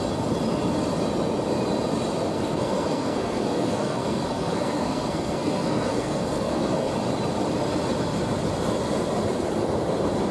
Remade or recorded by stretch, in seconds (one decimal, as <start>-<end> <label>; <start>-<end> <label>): 0.0-2.3 recorded; 2.3-6.9 remade; 6.9-10.3 recorded